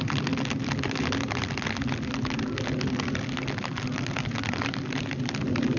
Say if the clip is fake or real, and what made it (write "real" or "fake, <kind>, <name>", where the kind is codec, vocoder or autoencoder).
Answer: real